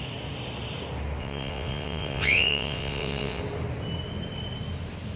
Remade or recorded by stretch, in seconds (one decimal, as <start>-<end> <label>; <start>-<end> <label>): 0.0-1.2 recorded; 1.2-3.4 remade; 3.4-5.2 recorded

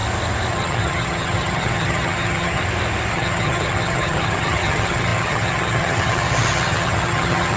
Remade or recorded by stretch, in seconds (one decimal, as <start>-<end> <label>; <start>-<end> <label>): 0.0-0.5 recorded; 0.5-2.6 remade; 2.6-3.1 recorded; 3.1-7.6 remade

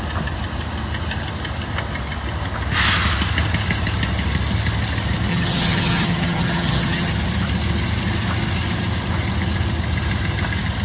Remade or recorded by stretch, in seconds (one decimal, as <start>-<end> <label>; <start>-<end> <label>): 0.0-5.3 recorded; 5.3-7.1 remade; 7.1-10.8 recorded